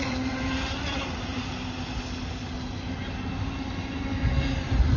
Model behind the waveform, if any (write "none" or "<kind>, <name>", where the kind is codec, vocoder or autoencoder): none